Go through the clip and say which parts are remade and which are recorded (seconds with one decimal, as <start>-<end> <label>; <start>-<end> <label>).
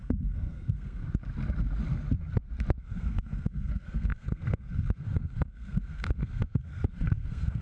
0.0-1.0 remade; 1.0-2.8 recorded; 2.8-7.6 remade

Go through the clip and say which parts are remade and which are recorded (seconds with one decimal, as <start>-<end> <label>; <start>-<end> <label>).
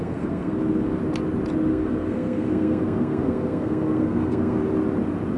0.0-1.0 remade; 1.0-1.7 recorded; 1.7-4.6 remade; 4.6-5.4 recorded